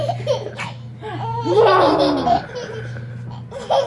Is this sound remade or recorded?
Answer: recorded